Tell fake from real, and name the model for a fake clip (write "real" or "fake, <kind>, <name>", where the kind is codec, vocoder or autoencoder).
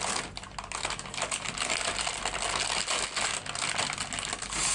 real